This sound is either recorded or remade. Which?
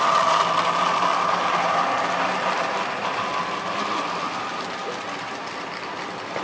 recorded